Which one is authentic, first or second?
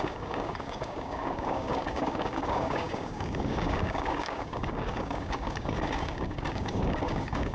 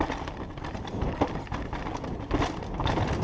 second